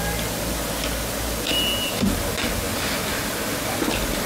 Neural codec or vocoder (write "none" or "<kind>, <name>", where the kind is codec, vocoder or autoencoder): none